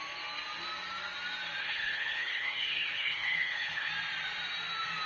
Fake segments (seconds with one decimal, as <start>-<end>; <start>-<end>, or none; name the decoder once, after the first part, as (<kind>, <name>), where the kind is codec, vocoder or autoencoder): 1.6-3.9 (codec, HILCodec)